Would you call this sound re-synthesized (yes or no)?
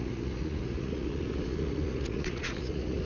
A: yes